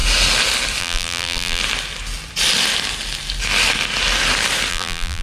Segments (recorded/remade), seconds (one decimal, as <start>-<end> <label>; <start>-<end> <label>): 0.0-0.8 recorded; 0.8-1.6 remade; 1.6-4.7 recorded; 4.7-5.2 remade